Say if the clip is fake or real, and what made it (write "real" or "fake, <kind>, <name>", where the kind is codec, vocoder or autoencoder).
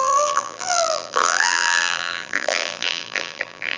fake, vocoder, BigVGAN v2